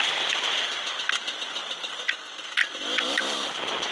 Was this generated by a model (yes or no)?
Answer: yes